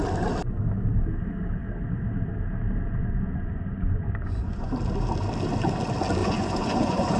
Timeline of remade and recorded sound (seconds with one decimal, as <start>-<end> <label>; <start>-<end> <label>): 0.0-2.9 recorded; 2.9-4.7 remade; 4.7-6.2 recorded; 6.2-7.2 remade